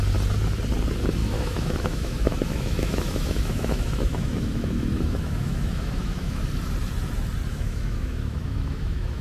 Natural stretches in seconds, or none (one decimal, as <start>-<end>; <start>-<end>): 0.0-1.2; 6.4-7.5